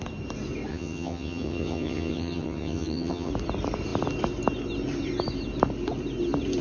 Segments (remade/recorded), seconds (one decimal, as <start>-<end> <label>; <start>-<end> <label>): 0.0-0.7 recorded; 0.7-3.3 remade; 3.3-6.6 recorded